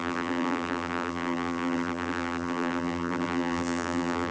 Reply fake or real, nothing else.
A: fake